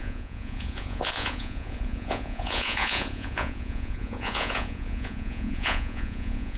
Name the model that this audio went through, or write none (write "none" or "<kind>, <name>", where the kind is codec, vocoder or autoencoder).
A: vocoder, Vocos